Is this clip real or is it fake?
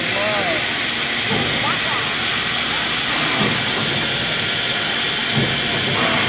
real